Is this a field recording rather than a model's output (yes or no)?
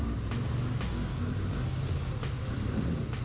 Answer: yes